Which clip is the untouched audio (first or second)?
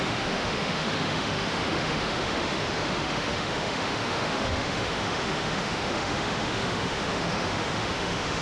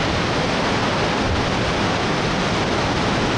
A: second